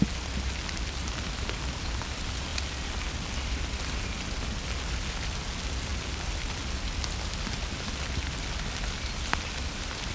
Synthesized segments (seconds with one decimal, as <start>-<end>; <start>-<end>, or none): none